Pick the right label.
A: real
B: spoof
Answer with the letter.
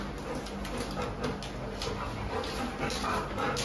A